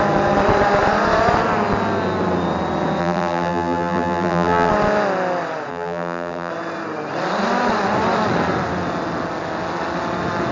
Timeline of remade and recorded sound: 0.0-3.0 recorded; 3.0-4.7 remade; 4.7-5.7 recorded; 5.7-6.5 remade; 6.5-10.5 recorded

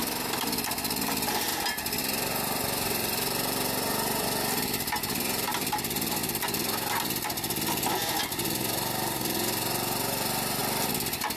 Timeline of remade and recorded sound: 0.0-1.5 remade; 1.5-2.0 recorded; 2.0-6.2 remade; 6.2-8.2 recorded; 8.2-10.6 remade; 10.6-11.4 recorded

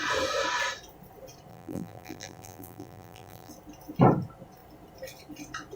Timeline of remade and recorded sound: 0.0-1.5 recorded; 1.5-3.5 remade; 3.5-5.8 recorded

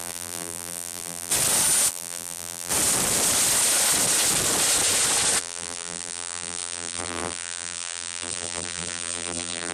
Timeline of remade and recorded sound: 0.0-1.3 remade; 1.3-1.9 recorded; 1.9-2.7 remade; 2.7-5.4 recorded; 5.4-9.7 remade

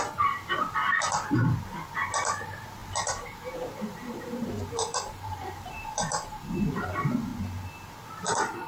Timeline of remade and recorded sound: 0.0-0.8 remade; 0.8-2.1 recorded; 2.1-7.3 remade; 7.3-8.2 recorded; 8.2-8.7 remade

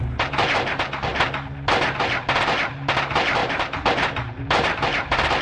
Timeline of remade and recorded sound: 0.0-3.4 recorded; 3.4-5.4 remade